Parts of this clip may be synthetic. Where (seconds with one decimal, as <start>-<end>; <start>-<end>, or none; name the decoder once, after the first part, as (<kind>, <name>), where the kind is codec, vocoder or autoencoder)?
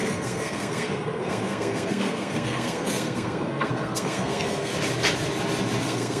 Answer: 0.0-4.7 (codec, SNAC); 5.8-6.2